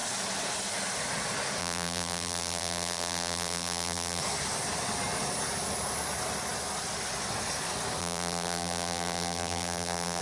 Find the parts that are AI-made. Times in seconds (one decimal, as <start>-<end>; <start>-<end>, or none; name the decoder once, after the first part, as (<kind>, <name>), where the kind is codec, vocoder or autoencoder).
1.6-4.2 (vocoder, BigVGAN v2); 8.0-10.2